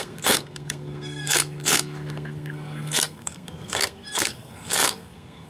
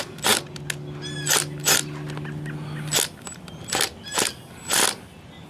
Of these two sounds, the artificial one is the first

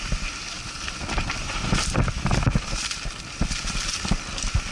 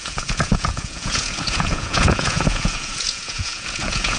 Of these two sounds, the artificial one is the second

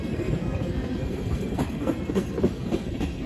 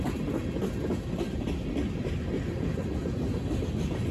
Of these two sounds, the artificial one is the first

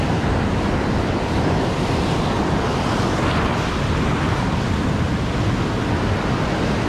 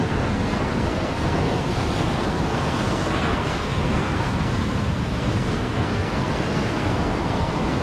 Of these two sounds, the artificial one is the second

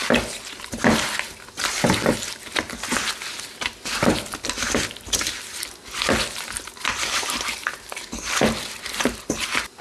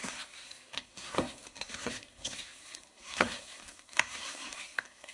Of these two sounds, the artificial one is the second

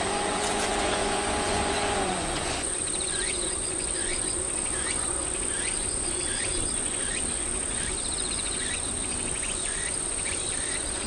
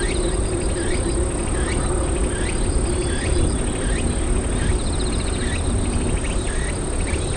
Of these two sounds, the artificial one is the first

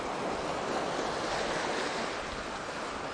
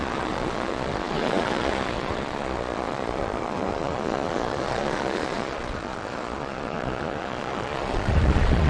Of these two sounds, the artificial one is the second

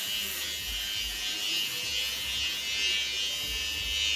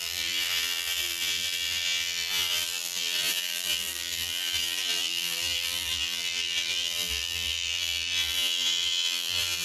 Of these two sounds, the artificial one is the second